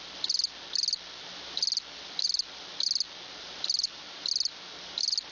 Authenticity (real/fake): real